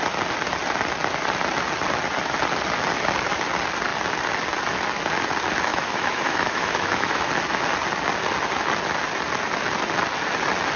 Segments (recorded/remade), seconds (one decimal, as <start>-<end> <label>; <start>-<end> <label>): 0.0-5.7 recorded; 5.7-7.3 remade; 7.3-10.8 recorded